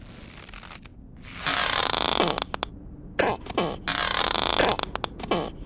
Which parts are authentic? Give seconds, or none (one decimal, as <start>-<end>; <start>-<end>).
0.0-5.7